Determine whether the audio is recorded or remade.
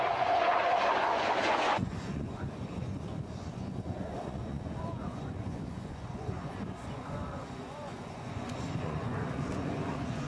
remade